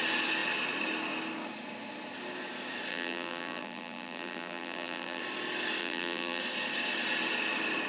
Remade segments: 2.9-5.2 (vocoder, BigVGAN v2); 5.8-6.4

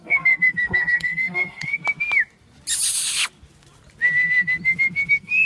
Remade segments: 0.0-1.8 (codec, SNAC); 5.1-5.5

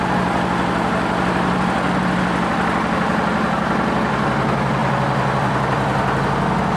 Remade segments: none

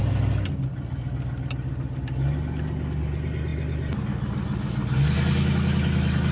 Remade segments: none

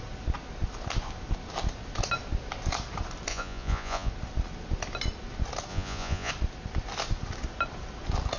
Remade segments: 3.3-4.1 (vocoder, Vocos); 5.7-6.3

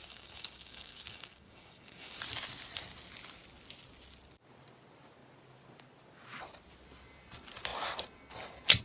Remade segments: 0.0-2.2 (codec, DAC)

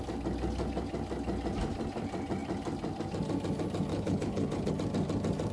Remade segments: 3.9-4.7 (codec, HILCodec)

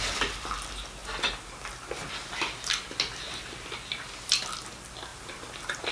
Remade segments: 5.1-5.9 (vocoder, BigVGAN v2)